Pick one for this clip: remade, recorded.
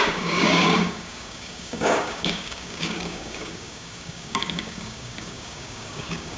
remade